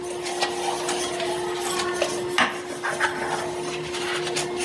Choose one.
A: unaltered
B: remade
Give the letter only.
A